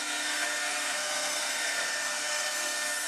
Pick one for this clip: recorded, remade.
remade